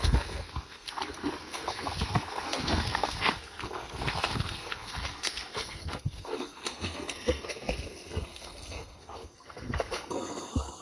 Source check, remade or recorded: remade